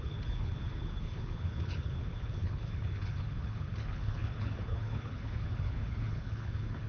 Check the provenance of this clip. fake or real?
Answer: fake